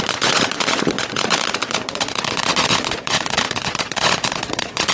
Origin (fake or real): fake